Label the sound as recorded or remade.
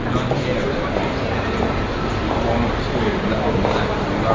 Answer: recorded